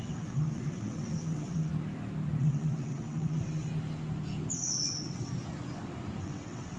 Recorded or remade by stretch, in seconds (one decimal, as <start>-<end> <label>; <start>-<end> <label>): 0.0-1.7 remade; 1.7-2.4 recorded; 2.4-3.7 remade; 3.7-4.5 recorded; 4.5-5.3 remade; 5.3-6.2 recorded; 6.2-6.8 remade